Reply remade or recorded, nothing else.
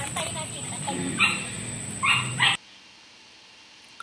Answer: recorded